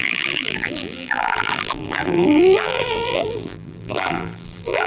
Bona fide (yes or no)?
no